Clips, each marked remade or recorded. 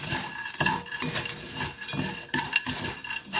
recorded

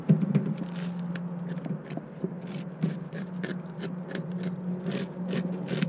recorded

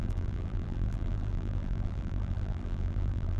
remade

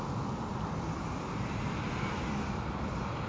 recorded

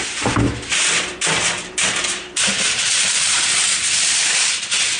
remade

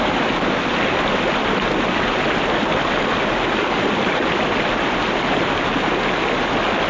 recorded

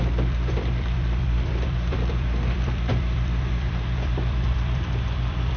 remade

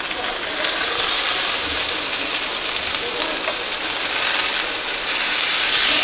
remade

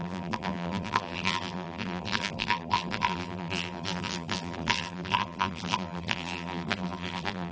remade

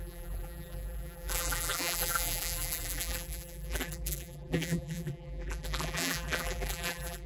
remade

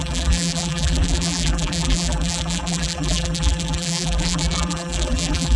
remade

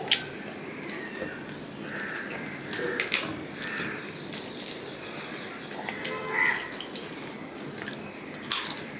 recorded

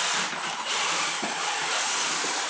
remade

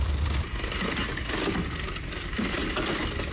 recorded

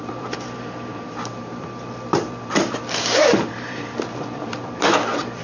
remade